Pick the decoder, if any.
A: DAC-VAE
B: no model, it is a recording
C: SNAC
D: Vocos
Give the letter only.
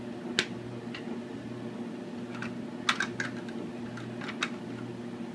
B